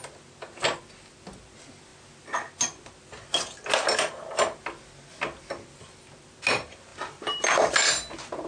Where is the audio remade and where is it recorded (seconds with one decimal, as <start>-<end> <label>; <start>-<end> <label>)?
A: 0.0-8.5 recorded